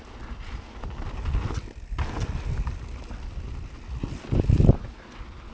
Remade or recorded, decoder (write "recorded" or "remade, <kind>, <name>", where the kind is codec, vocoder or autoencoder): recorded